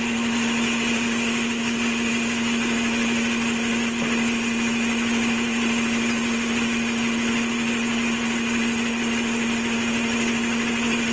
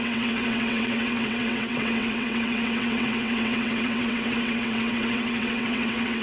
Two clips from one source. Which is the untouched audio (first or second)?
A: first